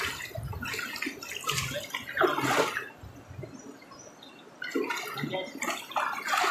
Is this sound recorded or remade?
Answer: recorded